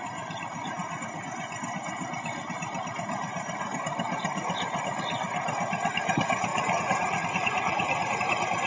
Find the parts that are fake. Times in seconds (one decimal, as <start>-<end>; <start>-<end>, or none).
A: 6.5-8.2